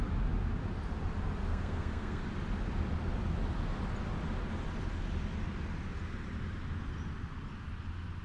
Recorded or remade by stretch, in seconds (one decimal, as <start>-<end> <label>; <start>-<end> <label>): 0.0-1.5 recorded; 1.5-2.2 remade; 2.2-8.2 recorded